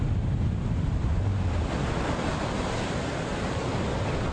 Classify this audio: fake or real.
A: real